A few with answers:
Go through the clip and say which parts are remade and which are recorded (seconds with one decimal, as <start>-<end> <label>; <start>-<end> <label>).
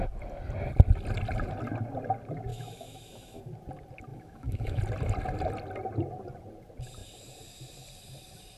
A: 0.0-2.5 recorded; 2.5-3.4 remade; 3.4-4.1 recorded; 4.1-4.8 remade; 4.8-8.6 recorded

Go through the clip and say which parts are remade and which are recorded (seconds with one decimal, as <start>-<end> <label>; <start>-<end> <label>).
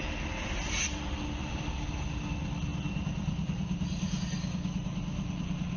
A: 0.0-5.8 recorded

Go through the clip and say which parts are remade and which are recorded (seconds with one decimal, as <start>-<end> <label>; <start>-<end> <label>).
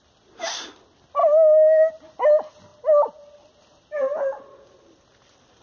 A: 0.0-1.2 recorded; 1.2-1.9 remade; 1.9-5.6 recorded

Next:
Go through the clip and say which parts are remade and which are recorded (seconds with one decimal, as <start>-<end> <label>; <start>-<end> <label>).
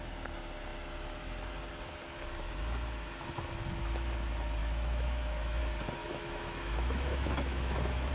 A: 0.0-4.6 recorded; 4.6-5.6 remade; 5.6-6.0 recorded; 6.0-8.1 remade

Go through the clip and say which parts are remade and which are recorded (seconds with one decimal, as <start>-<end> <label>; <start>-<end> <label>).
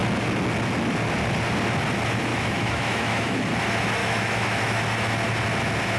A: 0.0-2.3 recorded; 2.3-3.4 remade; 3.4-4.0 recorded; 4.0-4.8 remade; 4.8-6.0 recorded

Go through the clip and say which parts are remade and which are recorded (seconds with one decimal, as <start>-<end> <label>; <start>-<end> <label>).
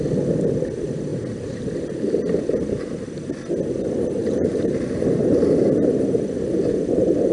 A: 0.0-7.3 recorded